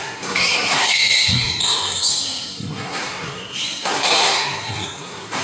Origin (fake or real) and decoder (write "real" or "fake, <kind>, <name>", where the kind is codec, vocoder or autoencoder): fake, codec, SNAC